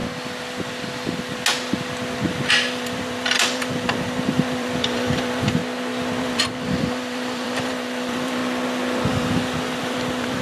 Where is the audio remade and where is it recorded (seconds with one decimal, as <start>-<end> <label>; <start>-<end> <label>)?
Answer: 0.0-2.5 recorded; 2.5-5.6 remade; 5.6-6.2 recorded; 6.2-8.4 remade; 8.4-9.1 recorded; 9.1-10.4 remade